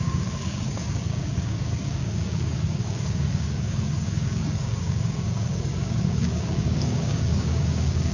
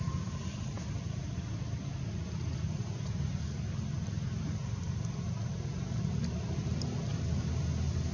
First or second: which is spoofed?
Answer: first